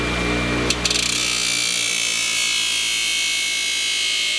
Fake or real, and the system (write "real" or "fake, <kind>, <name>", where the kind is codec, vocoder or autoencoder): real